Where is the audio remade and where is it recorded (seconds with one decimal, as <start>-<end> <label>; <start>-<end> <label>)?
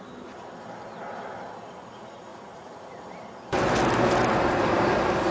0.0-2.3 recorded; 2.3-3.0 remade; 3.0-5.3 recorded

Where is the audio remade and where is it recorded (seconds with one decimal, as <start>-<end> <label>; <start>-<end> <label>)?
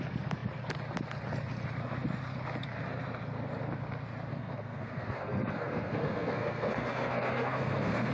0.0-4.3 recorded; 4.3-8.1 remade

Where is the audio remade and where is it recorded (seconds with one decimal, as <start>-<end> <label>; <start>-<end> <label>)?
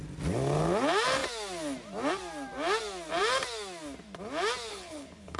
0.0-4.7 recorded; 4.7-5.4 remade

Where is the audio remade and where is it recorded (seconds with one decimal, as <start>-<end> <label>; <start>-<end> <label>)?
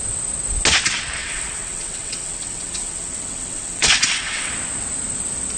0.0-1.2 recorded; 1.2-4.5 remade; 4.5-5.6 recorded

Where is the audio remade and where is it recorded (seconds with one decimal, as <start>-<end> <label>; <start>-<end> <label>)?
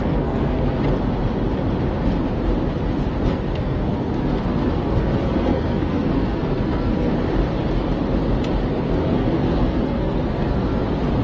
0.0-0.8 remade; 0.8-3.3 recorded; 3.3-7.1 remade; 7.1-8.7 recorded; 8.7-10.6 remade; 10.6-11.2 recorded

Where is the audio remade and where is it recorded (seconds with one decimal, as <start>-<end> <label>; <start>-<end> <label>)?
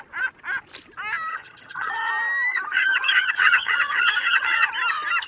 0.0-1.3 recorded; 1.3-2.1 remade; 2.1-2.5 recorded; 2.5-4.7 remade; 4.7-5.3 recorded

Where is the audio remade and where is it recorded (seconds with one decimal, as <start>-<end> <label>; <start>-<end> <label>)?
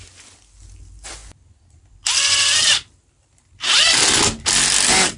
0.0-4.2 remade; 4.2-5.2 recorded